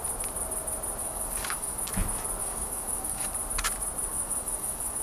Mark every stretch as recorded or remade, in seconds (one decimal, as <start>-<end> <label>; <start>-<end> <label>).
0.0-1.0 recorded; 1.0-1.8 remade; 1.8-2.4 recorded; 2.4-3.3 remade; 3.3-4.1 recorded; 4.1-5.0 remade